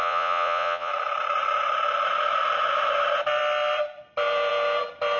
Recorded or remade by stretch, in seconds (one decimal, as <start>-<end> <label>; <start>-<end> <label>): 0.0-0.9 remade; 0.9-5.2 recorded